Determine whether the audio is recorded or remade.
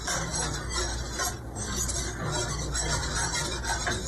recorded